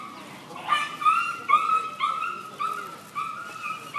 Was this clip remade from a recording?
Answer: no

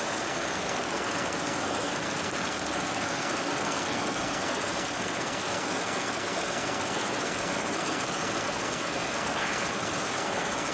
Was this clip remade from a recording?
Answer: yes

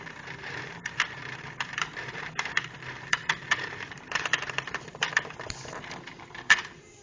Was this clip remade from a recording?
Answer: yes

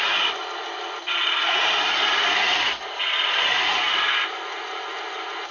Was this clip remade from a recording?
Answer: no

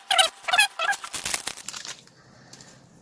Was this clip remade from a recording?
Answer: no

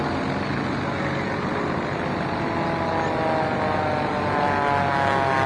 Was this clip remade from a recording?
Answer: no